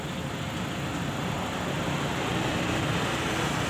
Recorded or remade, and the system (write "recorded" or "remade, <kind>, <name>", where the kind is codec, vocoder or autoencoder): recorded